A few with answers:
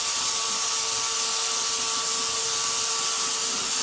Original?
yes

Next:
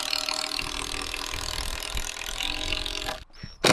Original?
yes